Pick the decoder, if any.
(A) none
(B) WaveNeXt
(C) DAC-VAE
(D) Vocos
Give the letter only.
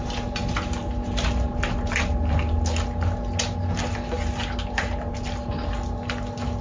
A